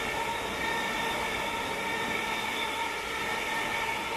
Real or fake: real